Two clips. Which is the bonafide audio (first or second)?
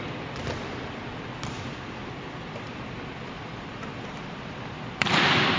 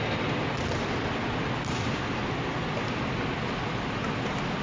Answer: second